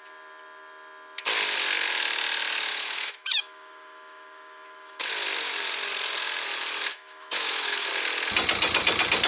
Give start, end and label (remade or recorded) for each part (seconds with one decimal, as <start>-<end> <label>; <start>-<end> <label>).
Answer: 0.0-2.7 recorded; 2.7-5.1 remade; 5.1-6.9 recorded; 6.9-7.9 remade; 7.9-9.3 recorded